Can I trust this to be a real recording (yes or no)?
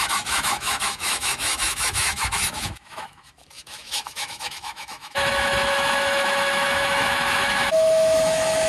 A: no